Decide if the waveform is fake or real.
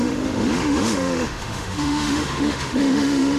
fake